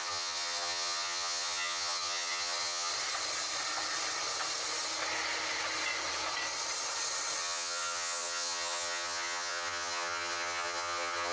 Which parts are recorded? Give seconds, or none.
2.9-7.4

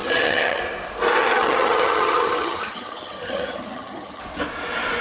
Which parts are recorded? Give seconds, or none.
0.6-1.2; 4.2-5.0

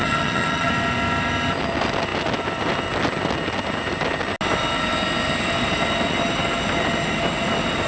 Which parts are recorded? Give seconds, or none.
0.7-7.9